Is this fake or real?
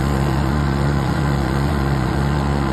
fake